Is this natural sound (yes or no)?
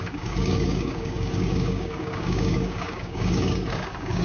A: no